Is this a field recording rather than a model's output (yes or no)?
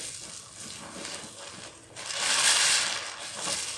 yes